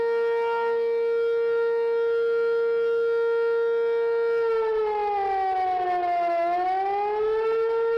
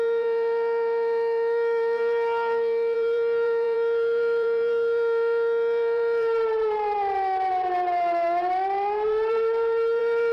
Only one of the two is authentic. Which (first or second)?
first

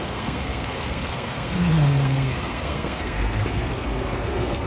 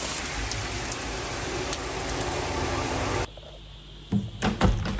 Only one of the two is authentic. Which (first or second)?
second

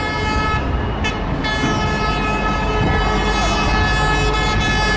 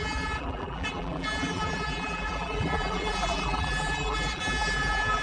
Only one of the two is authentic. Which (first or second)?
first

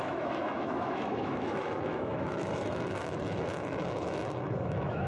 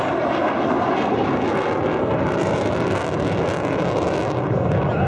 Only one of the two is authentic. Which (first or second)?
second